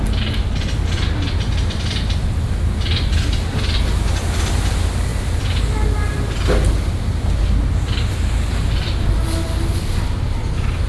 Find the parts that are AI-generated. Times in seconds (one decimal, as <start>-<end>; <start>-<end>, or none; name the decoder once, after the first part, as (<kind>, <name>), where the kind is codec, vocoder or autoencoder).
none